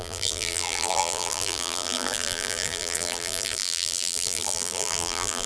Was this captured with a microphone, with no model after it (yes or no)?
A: no